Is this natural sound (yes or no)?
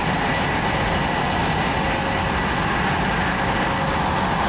yes